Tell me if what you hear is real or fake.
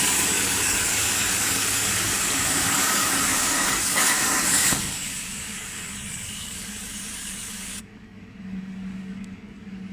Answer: fake